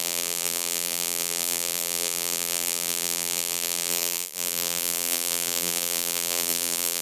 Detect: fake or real fake